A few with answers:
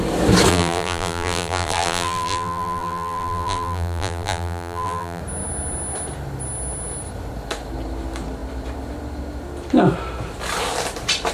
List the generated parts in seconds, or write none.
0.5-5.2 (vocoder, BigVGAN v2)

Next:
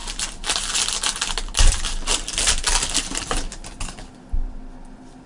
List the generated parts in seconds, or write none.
none

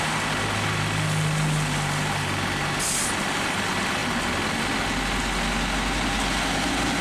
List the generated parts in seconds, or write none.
none

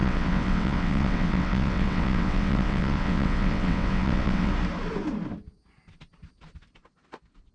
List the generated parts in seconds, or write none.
0.0-4.5 (vocoder, WaveNeXt)

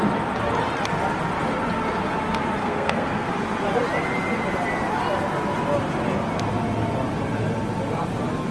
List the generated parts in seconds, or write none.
2.6-3.3 (codec, SNAC)

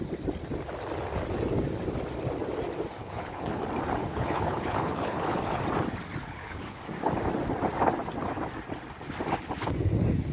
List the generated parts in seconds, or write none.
3.0-3.6 (codec, HILCodec); 4.0-5.6; 6.2-6.8

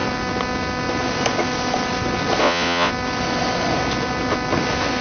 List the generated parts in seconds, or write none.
2.4-2.9 (vocoder, Vocos)